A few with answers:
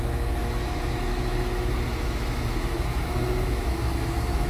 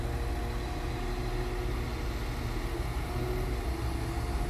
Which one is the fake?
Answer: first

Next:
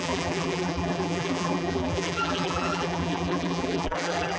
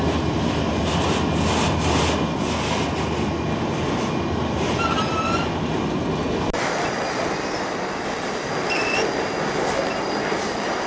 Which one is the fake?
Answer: first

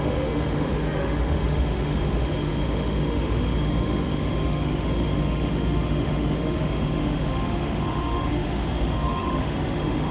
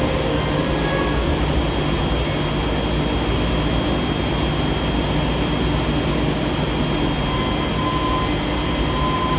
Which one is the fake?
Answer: first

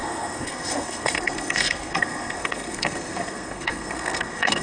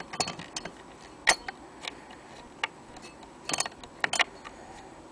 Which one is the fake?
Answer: first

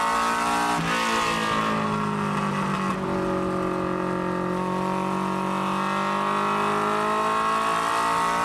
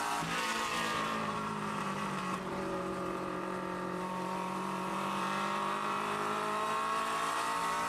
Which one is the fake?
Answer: second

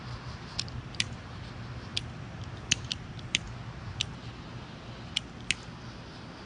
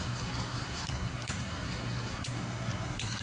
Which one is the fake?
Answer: second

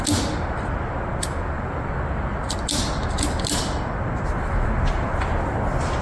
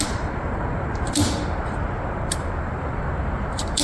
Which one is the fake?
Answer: second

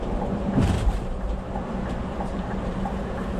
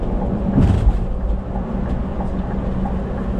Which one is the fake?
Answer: first